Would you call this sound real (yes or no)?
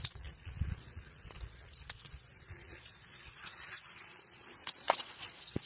no